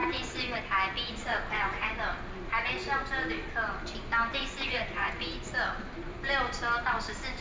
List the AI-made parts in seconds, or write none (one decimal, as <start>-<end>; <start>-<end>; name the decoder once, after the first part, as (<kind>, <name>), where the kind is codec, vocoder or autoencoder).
0.0-0.6 (vocoder, Vocos); 1.3-1.9; 4.4-5.1